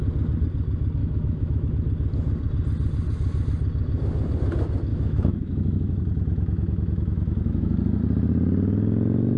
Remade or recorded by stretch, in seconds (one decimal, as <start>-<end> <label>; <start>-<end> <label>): 0.0-1.0 recorded; 1.0-1.7 remade; 1.7-4.9 recorded; 4.9-8.0 remade; 8.0-9.4 recorded